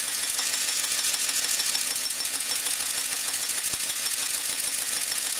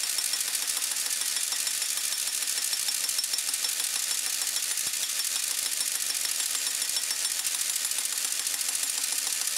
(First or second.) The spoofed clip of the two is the first